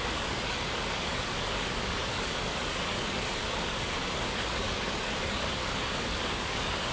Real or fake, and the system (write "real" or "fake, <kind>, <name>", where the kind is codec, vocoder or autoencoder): fake, codec, DAC